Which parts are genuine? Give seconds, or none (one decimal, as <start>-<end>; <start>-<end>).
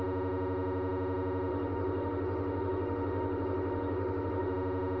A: 0.0-1.5; 4.5-5.0